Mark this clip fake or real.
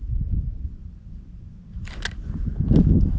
real